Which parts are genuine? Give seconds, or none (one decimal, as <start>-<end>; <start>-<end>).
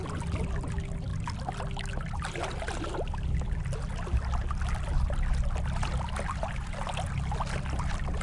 0.0-8.2